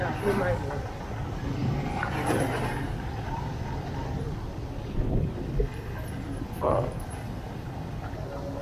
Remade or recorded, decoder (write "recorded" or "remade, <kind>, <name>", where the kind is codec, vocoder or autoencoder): recorded